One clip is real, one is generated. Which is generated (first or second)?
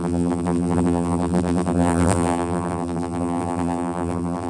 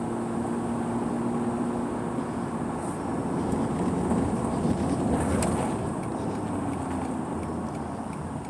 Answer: first